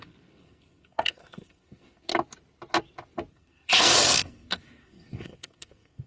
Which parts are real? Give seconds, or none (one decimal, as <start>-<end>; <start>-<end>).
2.1-3.3